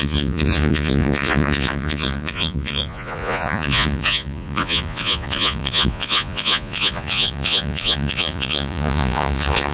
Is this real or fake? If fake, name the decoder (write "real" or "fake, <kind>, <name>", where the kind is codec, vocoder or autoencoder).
fake, vocoder, Vocos